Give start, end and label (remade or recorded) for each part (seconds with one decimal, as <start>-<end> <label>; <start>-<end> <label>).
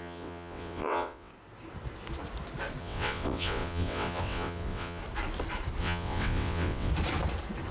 0.0-1.3 remade; 1.3-2.8 recorded; 2.8-5.0 remade; 5.0-5.8 recorded; 5.8-6.9 remade; 6.9-7.7 recorded